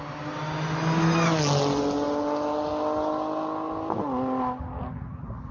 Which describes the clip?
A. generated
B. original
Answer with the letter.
B